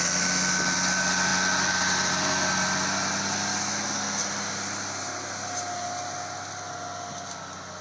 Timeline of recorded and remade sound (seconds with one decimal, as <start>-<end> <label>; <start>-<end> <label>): 0.0-7.8 recorded